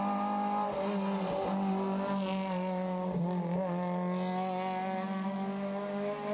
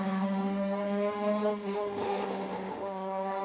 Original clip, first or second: first